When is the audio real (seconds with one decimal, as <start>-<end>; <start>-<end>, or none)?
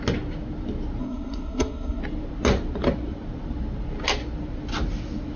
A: 0.0-1.0; 2.0-5.4